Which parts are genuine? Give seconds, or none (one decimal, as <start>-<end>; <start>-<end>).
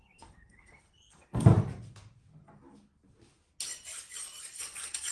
1.5-4.6